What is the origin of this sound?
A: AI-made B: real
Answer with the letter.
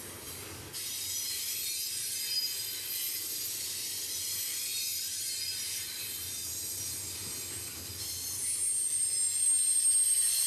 B